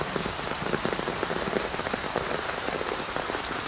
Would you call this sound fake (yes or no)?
yes